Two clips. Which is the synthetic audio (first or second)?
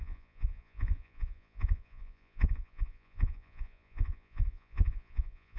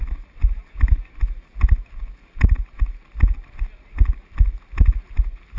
first